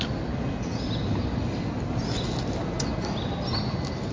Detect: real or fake real